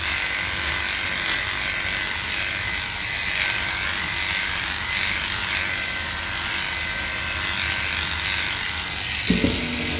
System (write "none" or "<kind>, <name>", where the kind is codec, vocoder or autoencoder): none